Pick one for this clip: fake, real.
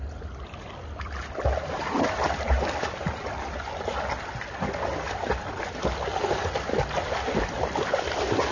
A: real